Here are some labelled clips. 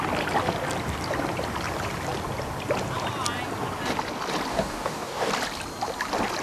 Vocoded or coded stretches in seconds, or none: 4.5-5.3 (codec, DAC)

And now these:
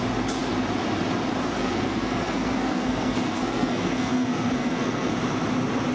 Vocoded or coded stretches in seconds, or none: 1.6-5.1 (codec, SNAC)